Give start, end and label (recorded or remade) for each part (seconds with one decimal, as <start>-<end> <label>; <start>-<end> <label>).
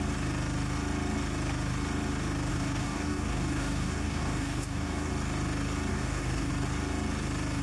0.0-2.5 recorded; 2.5-5.1 remade; 5.1-5.9 recorded; 5.9-6.5 remade; 6.5-7.6 recorded